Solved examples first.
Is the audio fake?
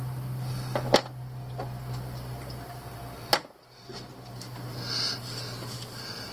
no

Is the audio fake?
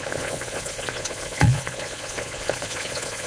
yes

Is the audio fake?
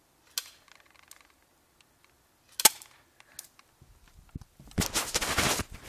no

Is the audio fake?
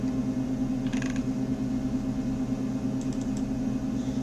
no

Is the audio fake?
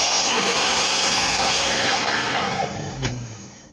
yes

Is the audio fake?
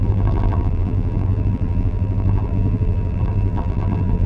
yes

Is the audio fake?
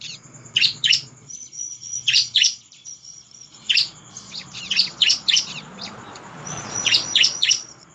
yes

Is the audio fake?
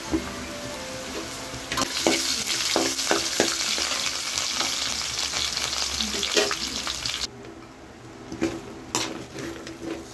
no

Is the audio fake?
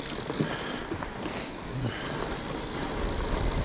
no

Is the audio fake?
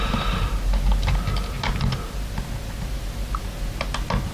no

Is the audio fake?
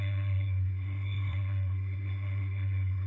yes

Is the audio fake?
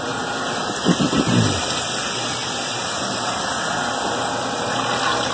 no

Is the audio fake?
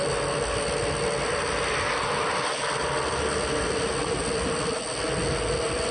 no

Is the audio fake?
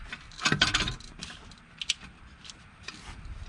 no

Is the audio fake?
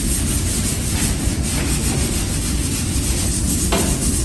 no